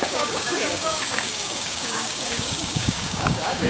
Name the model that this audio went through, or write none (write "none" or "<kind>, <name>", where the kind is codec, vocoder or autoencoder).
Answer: codec, DAC